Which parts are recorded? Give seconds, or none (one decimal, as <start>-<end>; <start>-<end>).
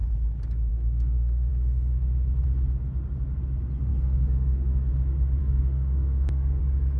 0.0-0.7; 1.5-3.9; 4.9-5.4; 6.6-7.0